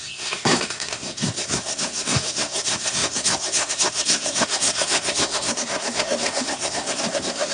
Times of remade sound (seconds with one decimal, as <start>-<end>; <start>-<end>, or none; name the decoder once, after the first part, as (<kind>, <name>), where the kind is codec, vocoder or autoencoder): 0.0-7.5 (codec, SNAC)